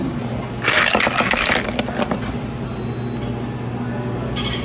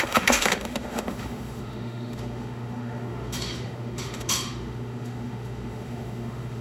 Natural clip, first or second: first